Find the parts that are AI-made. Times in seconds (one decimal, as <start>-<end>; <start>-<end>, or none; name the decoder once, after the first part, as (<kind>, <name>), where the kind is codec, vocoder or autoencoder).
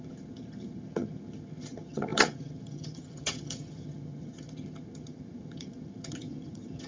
0.0-6.9 (vocoder, HiFi-GAN)